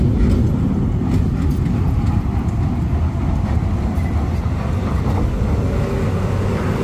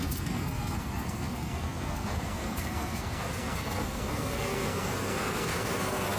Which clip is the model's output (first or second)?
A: second